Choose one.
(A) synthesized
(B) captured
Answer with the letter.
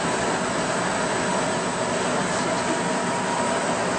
B